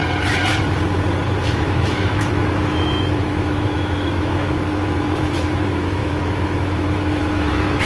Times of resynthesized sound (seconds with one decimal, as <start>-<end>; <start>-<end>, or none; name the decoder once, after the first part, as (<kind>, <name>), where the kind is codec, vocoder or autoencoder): 1.4-7.9 (autoencoder, DAC-VAE)

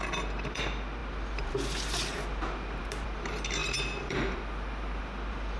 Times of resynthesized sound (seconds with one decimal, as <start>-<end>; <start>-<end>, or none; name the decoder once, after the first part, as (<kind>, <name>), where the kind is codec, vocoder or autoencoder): none